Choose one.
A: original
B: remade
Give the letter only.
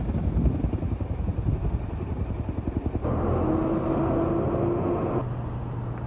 A